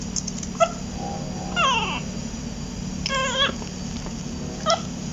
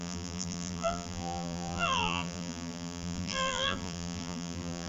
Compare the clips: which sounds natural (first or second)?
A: first